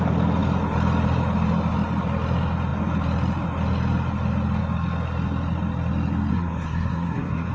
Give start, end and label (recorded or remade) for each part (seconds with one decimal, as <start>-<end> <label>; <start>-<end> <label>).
0.0-6.3 recorded; 6.3-7.5 remade